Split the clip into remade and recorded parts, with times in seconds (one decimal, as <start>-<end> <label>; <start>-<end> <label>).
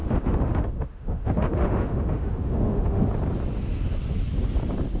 0.0-3.0 remade; 3.0-5.0 recorded